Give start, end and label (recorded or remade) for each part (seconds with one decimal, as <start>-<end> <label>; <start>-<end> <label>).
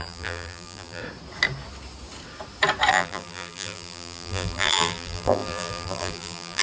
0.0-1.0 remade; 1.0-2.9 recorded; 2.9-6.6 remade